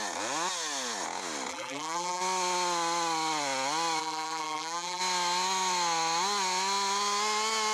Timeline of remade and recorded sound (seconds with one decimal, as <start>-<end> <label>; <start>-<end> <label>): 0.0-1.5 recorded; 1.5-2.2 remade; 2.2-4.0 recorded; 4.0-5.0 remade; 5.0-7.7 recorded